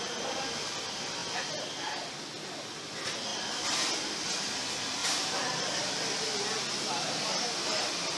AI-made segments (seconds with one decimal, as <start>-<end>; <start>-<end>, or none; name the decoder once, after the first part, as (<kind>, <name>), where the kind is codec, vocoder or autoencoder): 5.0-5.9 (vocoder, BigVGAN v2)